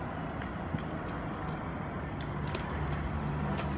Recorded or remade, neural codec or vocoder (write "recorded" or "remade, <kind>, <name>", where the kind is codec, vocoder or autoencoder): recorded